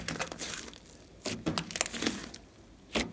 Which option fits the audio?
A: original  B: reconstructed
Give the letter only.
A